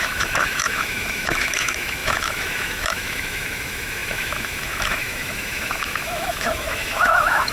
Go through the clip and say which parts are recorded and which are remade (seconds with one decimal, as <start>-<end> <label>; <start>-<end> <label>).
0.0-7.5 remade

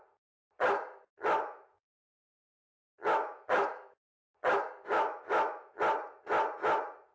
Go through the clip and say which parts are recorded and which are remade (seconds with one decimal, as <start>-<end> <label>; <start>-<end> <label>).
0.0-1.1 recorded; 1.1-2.1 remade; 2.1-2.5 recorded; 2.5-4.2 remade; 4.2-4.9 recorded; 4.9-5.8 remade; 5.8-7.1 recorded